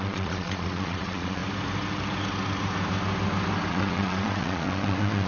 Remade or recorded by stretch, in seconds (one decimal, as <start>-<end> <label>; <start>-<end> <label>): 0.0-1.4 remade; 1.4-3.7 recorded; 3.7-5.3 remade